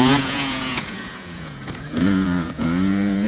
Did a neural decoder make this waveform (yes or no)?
yes